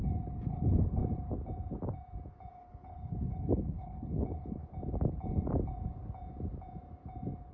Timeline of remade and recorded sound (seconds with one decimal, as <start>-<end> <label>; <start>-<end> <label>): 0.0-0.5 recorded; 0.5-1.0 remade; 1.0-2.5 recorded; 2.5-4.6 remade; 4.6-7.5 recorded